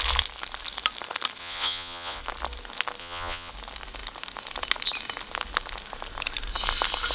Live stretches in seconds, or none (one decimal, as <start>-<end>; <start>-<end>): 0.0-1.4; 2.2-3.0; 3.5-7.1